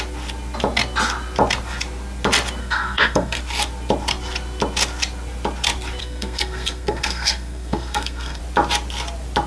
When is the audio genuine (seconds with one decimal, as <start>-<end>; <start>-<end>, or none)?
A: 0.0-2.6; 3.4-6.0; 8.4-9.5